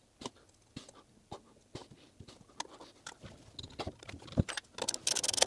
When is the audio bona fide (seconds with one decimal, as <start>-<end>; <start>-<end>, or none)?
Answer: 0.0-5.5